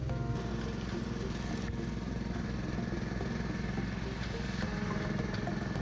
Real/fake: real